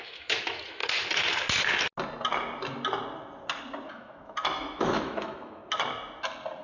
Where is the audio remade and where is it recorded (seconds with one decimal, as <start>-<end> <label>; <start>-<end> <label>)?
0.0-0.8 remade; 0.8-3.9 recorded; 3.9-5.6 remade; 5.6-6.6 recorded